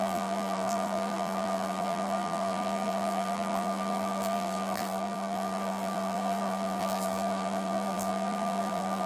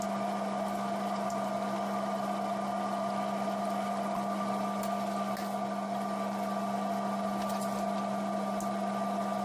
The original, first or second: second